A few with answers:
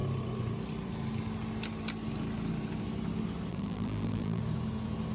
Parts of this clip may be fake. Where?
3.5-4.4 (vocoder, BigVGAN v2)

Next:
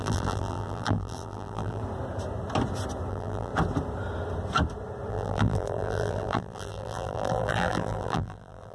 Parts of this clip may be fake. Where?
0.0-1.8 (vocoder, BigVGAN v2); 3.1-3.5; 5.1-8.7

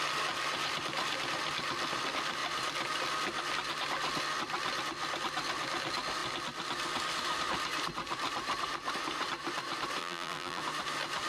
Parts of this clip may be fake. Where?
10.0-10.6 (vocoder, BigVGAN v2)

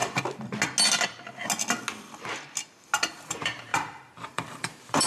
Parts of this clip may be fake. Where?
3.1-5.1 (vocoder, BigVGAN v2)

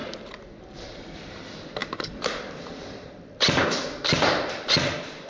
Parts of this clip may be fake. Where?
0.0-1.3 (vocoder, BigVGAN v2); 1.8-4.5

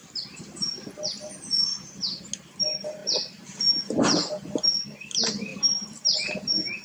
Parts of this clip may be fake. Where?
5.5-6.8 (vocoder, BigVGAN v2)